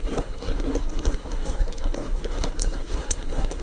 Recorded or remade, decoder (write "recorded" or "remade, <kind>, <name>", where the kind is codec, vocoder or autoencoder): remade, codec, SNAC